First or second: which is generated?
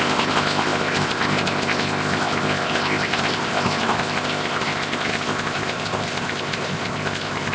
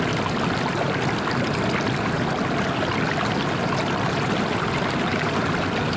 first